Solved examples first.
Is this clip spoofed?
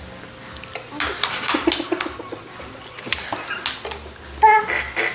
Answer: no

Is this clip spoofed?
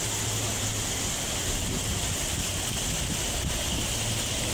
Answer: no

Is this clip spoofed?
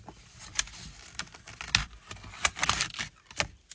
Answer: no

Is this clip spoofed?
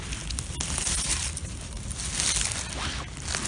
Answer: no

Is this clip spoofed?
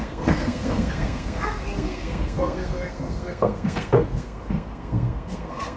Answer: yes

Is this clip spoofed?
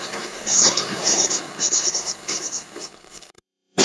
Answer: yes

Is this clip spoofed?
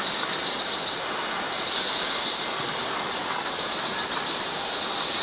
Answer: no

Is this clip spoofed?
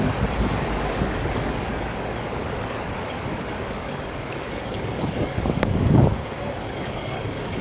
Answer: yes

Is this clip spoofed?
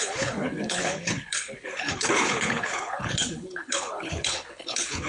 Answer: yes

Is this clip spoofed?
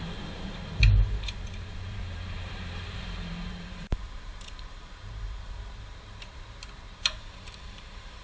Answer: yes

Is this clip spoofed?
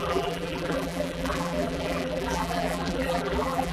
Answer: yes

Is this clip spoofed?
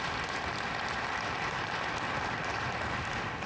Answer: yes